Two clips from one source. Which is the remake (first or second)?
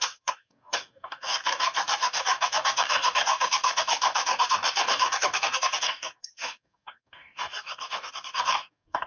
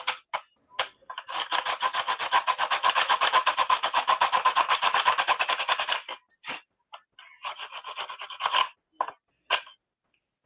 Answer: first